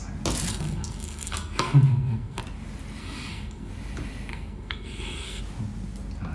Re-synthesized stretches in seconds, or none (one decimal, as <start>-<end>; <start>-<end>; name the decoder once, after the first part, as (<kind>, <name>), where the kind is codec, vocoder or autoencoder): 0.5-2.4 (codec, SNAC); 3.0-3.7; 4.3-5.4